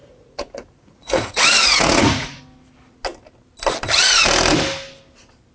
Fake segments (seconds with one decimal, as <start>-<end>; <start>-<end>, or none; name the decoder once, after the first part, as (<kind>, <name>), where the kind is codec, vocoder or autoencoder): 0.0-2.4 (vocoder, Vocos)